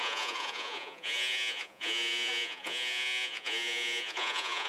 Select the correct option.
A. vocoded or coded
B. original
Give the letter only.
A